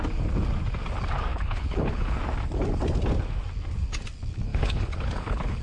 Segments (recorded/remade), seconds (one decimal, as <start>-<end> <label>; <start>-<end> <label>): 0.0-1.3 recorded; 1.3-2.2 remade; 2.2-4.5 recorded; 4.5-5.6 remade